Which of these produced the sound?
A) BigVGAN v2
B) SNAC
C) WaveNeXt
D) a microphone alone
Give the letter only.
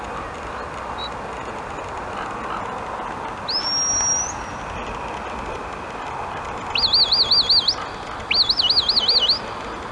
D